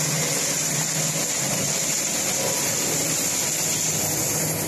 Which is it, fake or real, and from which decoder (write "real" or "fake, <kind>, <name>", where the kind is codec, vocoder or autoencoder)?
real